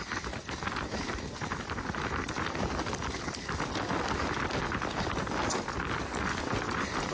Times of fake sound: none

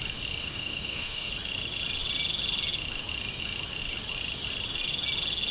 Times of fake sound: 0.4-1.3 (autoencoder, DAC-VAE)

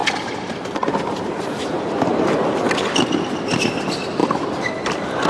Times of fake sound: 4.2-5.3 (vocoder, BigVGAN v2)

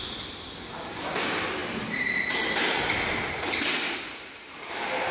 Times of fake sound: none